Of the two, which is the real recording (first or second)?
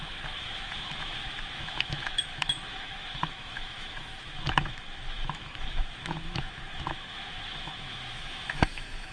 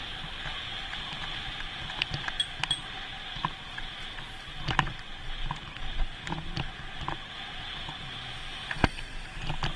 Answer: second